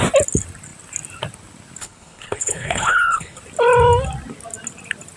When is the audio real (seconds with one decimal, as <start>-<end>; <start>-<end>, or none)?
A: 0.0-1.8; 3.4-5.2